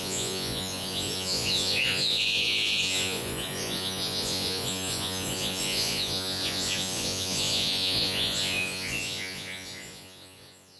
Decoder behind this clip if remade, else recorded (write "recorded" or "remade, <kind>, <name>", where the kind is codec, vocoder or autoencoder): remade, vocoder, Vocos